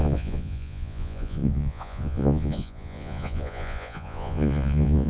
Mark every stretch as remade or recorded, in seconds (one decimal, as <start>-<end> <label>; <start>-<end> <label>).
0.0-5.1 remade